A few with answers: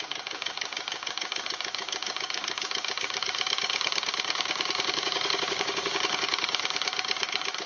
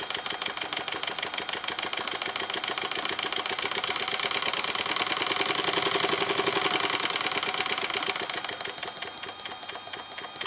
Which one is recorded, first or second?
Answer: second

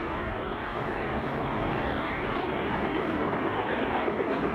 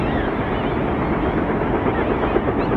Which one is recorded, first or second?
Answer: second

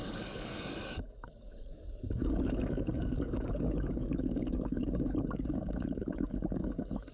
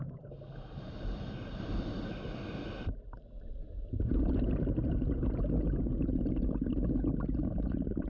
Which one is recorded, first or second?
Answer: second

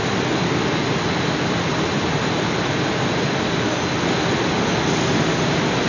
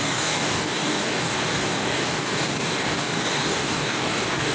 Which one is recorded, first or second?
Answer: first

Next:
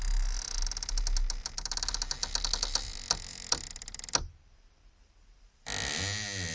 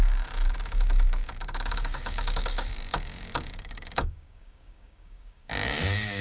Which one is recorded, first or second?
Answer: first